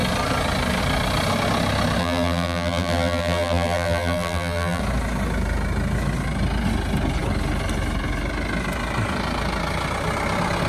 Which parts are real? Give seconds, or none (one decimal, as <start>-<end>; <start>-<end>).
0.0-2.0; 4.8-10.7